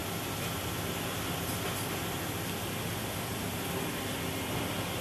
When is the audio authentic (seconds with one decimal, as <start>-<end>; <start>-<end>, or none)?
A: 0.0-5.0